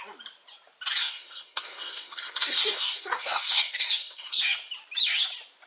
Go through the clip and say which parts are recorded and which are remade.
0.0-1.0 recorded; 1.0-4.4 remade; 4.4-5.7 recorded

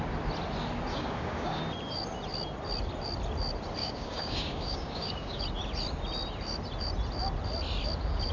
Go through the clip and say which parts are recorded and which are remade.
0.0-0.9 recorded; 0.9-1.6 remade; 1.6-3.8 recorded; 3.8-5.4 remade; 5.4-8.3 recorded

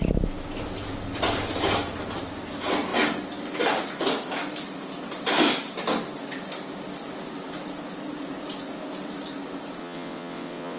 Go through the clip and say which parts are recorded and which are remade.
0.0-9.8 recorded; 9.8-10.8 remade

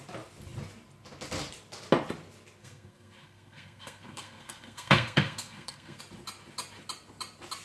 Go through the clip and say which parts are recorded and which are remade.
0.0-2.6 recorded; 2.6-6.0 remade; 6.0-7.6 recorded

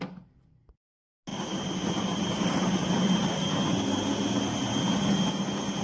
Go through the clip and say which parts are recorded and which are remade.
0.0-1.3 recorded; 1.3-2.5 remade; 2.5-5.8 recorded